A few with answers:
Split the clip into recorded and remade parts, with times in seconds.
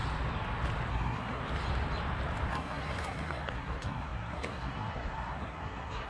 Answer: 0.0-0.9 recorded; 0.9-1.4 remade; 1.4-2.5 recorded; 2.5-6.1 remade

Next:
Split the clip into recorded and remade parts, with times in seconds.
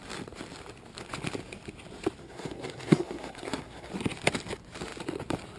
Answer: 0.0-2.2 recorded; 2.2-3.9 remade; 3.9-5.6 recorded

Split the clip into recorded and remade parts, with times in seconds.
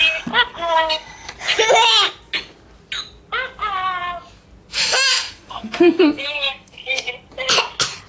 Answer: 0.0-0.6 recorded; 0.6-1.3 remade; 1.3-5.1 recorded; 5.1-7.1 remade; 7.1-8.1 recorded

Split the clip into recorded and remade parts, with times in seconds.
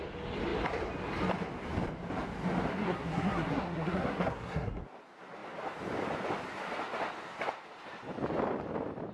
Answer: 0.0-2.7 recorded; 2.7-4.8 remade; 4.8-9.1 recorded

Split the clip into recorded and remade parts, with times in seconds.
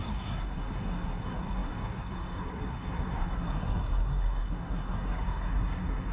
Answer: 0.0-6.1 remade